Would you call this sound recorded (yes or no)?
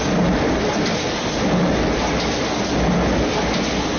yes